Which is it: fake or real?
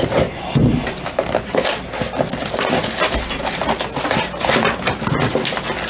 real